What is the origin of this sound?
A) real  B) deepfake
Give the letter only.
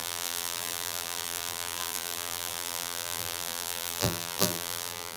B